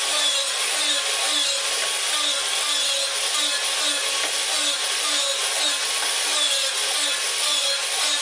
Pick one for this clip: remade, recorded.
recorded